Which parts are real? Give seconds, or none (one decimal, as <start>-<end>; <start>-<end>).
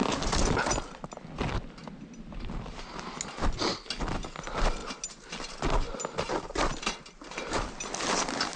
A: 0.0-8.6